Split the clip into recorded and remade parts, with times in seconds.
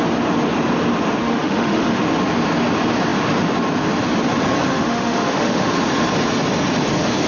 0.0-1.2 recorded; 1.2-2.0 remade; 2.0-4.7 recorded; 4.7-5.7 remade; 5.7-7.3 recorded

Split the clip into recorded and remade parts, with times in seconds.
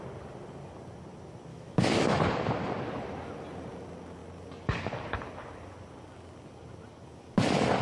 0.0-1.5 recorded; 1.5-2.2 remade; 2.2-7.8 recorded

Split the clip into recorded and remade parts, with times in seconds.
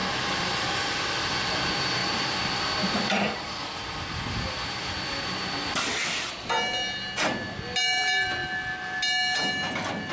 0.0-10.1 recorded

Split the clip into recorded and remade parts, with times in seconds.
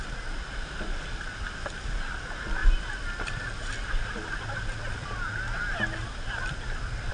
0.0-7.1 recorded